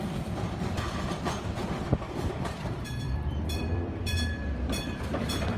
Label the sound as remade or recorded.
remade